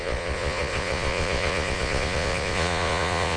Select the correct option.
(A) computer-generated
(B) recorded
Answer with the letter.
A